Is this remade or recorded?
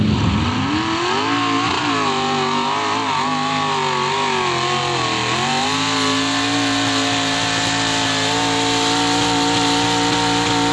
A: recorded